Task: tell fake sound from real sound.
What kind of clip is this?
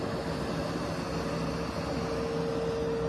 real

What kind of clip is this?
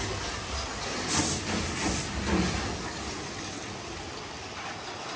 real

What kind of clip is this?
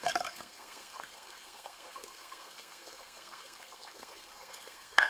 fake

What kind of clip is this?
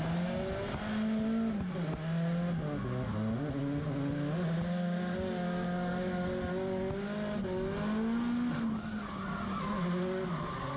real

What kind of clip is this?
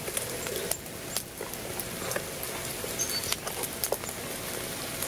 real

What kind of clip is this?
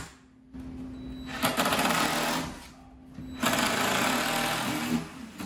real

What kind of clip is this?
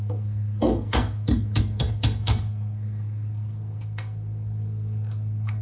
fake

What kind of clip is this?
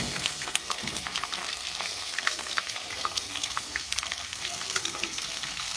fake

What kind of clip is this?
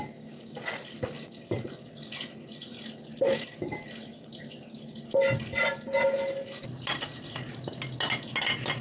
real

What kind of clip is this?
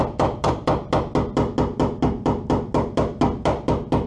real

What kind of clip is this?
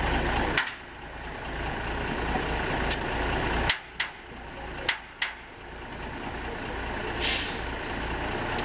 real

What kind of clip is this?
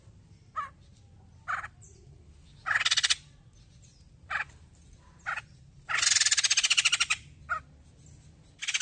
real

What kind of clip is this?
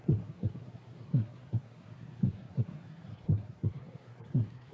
fake